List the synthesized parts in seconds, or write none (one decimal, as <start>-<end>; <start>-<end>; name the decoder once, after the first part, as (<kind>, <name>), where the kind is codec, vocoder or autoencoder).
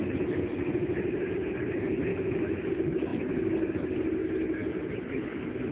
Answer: 2.1-2.7 (autoencoder, DAC-VAE)